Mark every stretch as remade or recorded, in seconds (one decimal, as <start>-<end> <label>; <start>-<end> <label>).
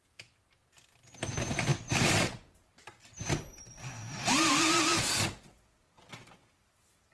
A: 0.0-7.1 recorded